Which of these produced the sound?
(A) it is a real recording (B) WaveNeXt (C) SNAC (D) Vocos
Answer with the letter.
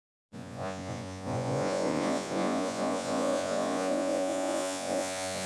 D